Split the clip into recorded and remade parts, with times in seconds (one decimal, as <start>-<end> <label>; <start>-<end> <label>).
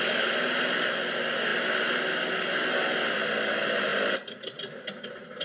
0.0-5.4 recorded